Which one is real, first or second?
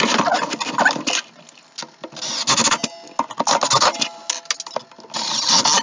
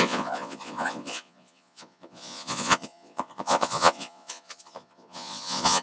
first